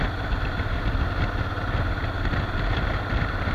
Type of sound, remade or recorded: recorded